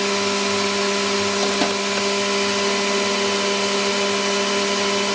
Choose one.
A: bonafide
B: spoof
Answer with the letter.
A